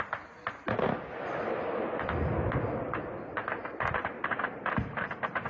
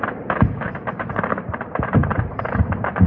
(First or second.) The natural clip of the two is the first